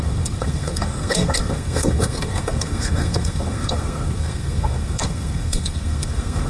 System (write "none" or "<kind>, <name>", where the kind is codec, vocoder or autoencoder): codec, SNAC